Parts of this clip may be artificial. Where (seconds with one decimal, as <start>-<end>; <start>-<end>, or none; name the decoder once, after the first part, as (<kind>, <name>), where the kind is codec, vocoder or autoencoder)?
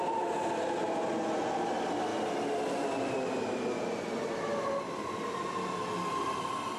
none